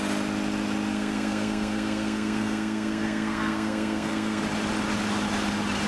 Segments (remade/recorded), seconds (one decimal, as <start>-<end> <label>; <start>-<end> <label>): 0.0-0.9 recorded; 0.9-4.4 remade; 4.4-5.9 recorded